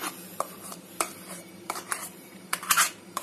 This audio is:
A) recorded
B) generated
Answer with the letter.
B